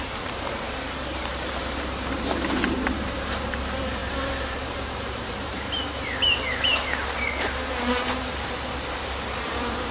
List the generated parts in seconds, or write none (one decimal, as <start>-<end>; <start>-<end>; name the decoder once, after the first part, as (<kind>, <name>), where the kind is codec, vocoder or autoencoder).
0.0-9.9 (vocoder, BigVGAN v2)